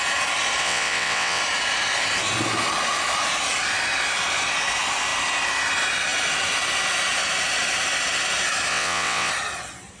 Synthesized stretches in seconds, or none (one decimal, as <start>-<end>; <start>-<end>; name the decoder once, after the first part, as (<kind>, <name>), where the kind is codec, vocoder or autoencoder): 0.6-1.4 (vocoder, WaveNeXt); 8.7-9.3